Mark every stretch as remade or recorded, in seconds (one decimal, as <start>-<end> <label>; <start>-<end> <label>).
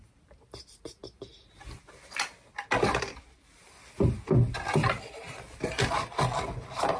0.0-7.0 recorded